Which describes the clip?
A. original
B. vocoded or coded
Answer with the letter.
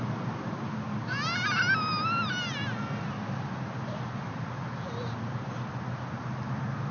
A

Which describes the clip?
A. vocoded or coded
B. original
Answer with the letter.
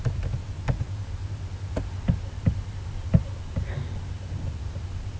B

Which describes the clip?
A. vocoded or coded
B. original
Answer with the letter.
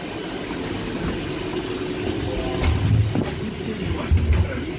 B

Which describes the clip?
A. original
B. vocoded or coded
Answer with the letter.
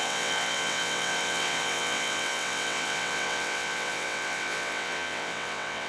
B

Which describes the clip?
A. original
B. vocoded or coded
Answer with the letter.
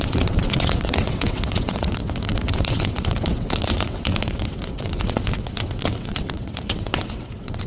B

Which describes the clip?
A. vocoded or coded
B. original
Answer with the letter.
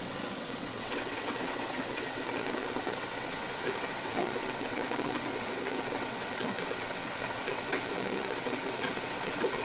A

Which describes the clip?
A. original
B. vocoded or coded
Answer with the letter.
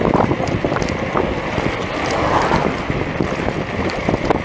A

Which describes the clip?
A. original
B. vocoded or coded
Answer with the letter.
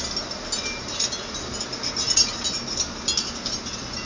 A